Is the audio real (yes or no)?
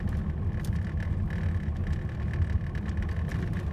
yes